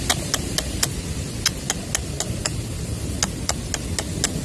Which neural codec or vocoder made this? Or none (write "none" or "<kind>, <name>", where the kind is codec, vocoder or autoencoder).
none